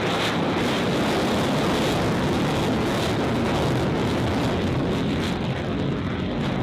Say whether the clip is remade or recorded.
recorded